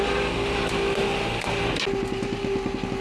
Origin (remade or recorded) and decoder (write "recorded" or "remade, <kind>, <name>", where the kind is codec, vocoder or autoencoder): recorded